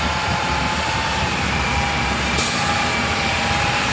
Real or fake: fake